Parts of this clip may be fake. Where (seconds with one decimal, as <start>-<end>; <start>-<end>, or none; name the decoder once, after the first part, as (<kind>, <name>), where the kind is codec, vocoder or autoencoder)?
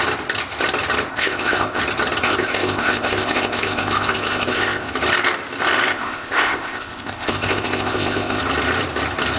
1.1-1.8 (codec, ZipCodec); 2.2-4.9; 5.9-8.4